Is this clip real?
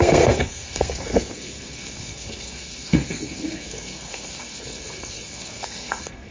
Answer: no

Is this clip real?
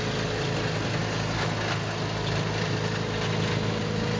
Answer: yes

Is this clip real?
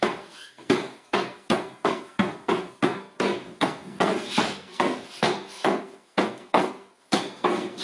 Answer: no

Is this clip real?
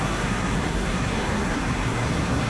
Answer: no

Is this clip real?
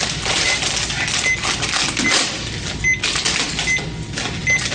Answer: yes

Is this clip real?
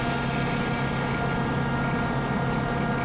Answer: yes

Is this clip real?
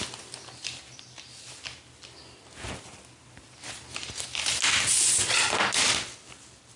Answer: yes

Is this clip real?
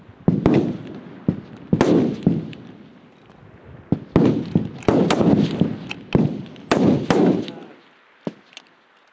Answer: yes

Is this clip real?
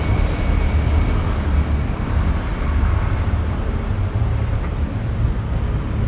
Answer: yes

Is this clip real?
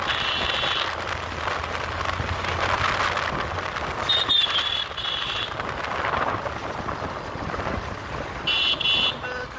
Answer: yes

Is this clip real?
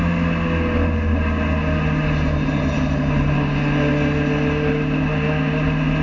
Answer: yes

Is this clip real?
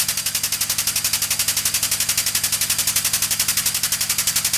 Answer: yes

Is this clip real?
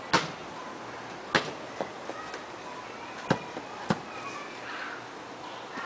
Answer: yes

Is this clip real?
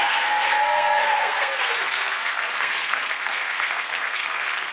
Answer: no